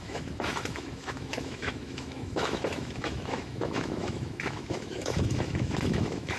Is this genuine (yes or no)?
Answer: no